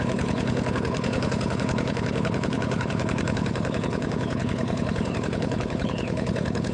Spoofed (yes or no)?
yes